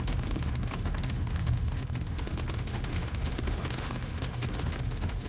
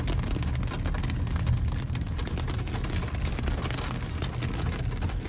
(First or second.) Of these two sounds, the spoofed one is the first